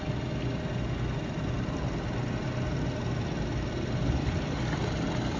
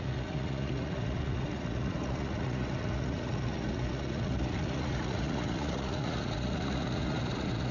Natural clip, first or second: first